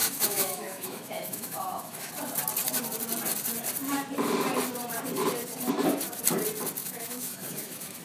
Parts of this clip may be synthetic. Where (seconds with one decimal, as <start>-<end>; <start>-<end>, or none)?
0.0-2.1; 6.8-8.0